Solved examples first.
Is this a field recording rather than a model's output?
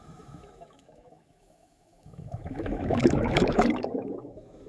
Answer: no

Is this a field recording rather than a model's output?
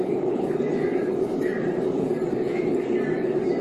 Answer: no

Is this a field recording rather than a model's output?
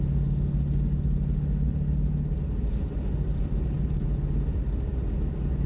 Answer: yes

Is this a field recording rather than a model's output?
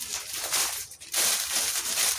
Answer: no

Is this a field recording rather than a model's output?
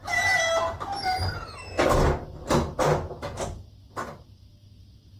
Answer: yes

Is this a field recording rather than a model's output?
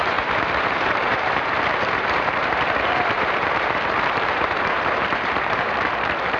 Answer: no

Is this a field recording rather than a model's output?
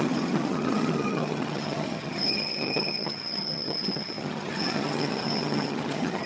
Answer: no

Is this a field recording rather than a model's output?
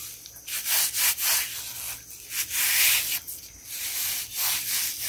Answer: yes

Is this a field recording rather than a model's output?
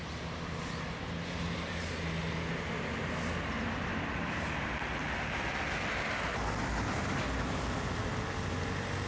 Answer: yes